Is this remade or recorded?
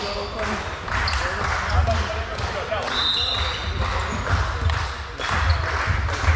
recorded